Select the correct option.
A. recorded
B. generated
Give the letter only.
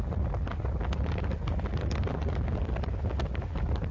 A